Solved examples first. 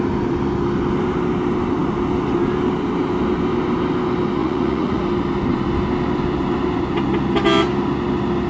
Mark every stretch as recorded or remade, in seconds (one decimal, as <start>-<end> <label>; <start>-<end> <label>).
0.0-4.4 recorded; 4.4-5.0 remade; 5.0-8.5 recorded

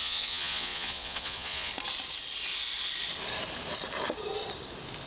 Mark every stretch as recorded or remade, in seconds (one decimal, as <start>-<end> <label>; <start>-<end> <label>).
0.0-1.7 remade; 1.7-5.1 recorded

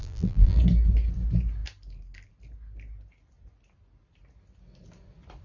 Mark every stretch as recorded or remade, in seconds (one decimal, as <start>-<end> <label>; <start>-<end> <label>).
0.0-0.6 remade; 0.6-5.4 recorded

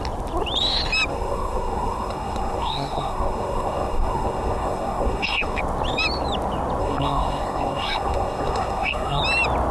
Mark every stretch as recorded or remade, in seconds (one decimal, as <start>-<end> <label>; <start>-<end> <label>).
0.0-1.1 recorded; 1.1-5.6 remade; 5.6-6.8 recorded; 6.8-9.2 remade; 9.2-9.7 recorded